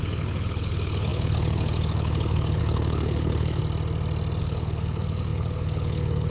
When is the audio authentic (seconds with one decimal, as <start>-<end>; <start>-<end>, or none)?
3.6-4.4